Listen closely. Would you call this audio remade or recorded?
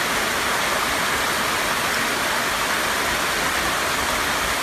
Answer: recorded